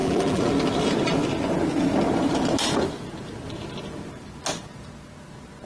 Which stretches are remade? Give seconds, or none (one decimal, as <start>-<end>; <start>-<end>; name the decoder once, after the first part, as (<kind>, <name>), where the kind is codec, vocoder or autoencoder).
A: 0.0-0.5 (vocoder, BigVGAN v2)